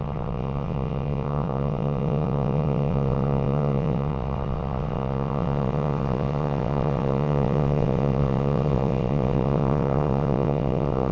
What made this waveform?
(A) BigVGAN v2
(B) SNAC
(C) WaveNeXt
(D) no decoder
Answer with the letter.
C